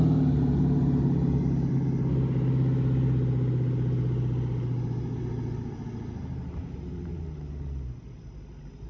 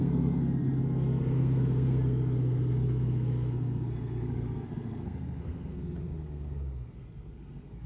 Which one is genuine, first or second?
first